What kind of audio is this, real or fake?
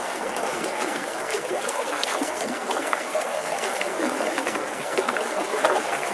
fake